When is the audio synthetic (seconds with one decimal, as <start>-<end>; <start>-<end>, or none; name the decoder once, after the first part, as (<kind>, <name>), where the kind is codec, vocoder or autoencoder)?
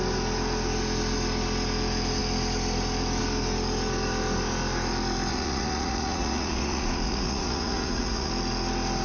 5.3-8.3 (vocoder, Vocos)